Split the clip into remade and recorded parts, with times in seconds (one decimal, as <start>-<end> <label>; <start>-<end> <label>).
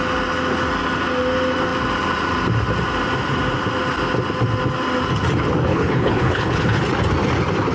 0.0-5.7 recorded; 5.7-6.8 remade; 6.8-7.7 recorded